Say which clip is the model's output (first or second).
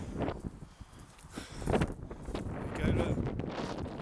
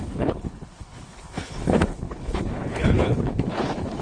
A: second